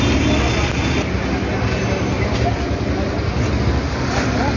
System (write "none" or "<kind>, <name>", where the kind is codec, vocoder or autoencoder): none